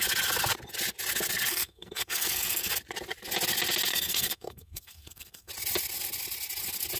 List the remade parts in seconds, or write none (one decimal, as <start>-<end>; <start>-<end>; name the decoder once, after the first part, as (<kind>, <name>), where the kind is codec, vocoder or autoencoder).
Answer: 1.5-2.7 (codec, SNAC); 3.9-5.5